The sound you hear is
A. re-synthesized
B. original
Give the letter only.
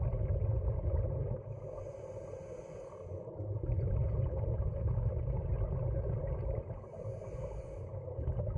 B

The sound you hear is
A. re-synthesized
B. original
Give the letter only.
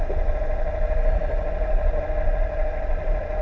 B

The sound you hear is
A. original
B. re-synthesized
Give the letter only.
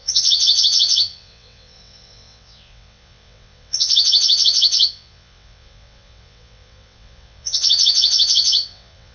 B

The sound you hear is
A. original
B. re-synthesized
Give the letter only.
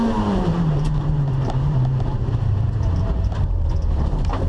B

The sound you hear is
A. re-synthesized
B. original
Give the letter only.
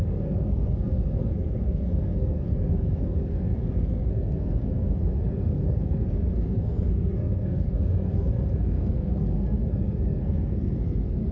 A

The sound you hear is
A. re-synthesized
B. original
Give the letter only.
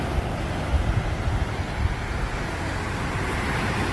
B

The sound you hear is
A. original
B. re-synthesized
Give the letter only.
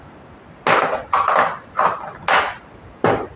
A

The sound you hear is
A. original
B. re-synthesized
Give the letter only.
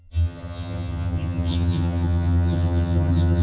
B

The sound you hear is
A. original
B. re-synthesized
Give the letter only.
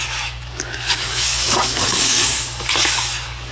B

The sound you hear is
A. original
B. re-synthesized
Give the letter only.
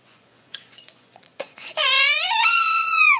B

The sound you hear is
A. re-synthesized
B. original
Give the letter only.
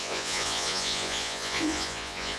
A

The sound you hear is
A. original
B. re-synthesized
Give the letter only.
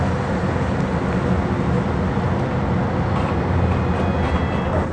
A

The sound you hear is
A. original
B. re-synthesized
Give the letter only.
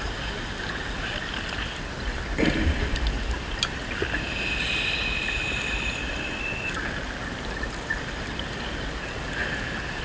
A